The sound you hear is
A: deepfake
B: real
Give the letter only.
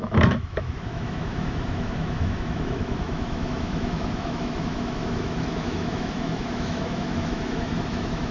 A